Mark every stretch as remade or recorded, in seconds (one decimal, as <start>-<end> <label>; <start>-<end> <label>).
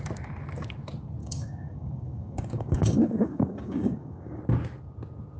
0.0-1.2 recorded; 1.2-4.4 remade; 4.4-5.4 recorded